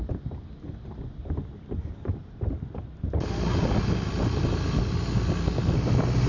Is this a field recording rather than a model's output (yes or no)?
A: yes